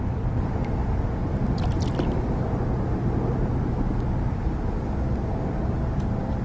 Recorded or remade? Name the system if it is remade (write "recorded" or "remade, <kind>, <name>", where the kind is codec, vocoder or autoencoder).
recorded